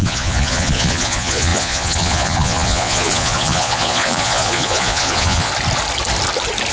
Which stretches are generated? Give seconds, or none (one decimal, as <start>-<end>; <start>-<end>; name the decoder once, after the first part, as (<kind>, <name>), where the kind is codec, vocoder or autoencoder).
0.0-5.5 (vocoder, Vocos)